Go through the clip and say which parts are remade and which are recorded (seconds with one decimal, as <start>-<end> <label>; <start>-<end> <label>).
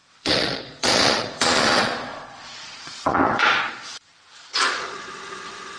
0.0-5.8 remade